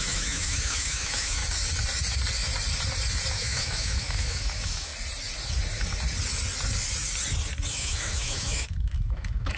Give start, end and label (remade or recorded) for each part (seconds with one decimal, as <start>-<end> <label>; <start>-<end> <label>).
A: 0.0-1.4 remade; 1.4-3.3 recorded; 3.3-4.9 remade; 4.9-7.7 recorded; 7.7-9.6 remade